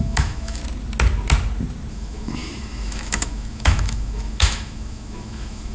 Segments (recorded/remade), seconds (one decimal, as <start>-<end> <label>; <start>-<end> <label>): 0.0-0.6 remade; 0.6-1.9 recorded; 1.9-5.7 remade